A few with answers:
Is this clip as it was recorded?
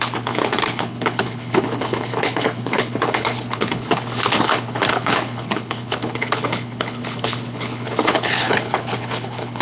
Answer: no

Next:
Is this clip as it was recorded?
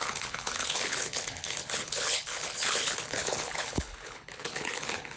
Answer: no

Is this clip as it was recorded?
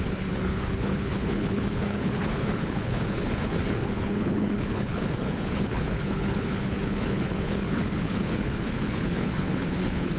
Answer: no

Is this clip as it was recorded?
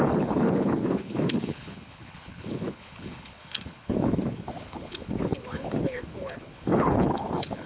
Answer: no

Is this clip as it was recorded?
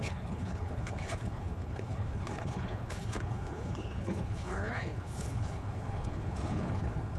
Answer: no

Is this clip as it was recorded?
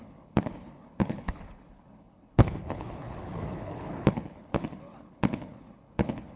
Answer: no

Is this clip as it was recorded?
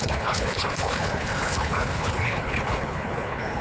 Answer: no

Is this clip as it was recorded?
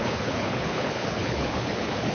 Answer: no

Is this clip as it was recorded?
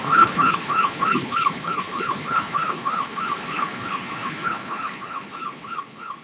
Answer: no